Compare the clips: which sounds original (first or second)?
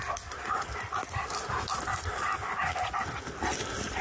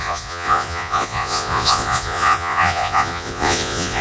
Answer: first